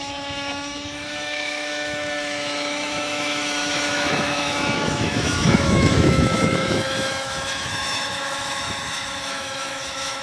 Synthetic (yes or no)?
yes